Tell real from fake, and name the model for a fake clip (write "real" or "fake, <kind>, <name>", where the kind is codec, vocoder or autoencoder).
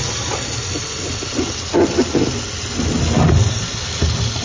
real